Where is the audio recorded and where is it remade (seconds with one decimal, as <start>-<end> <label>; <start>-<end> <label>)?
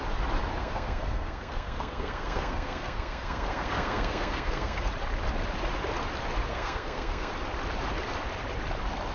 0.0-0.6 recorded; 0.6-4.9 remade; 4.9-6.5 recorded; 6.5-7.3 remade; 7.3-9.1 recorded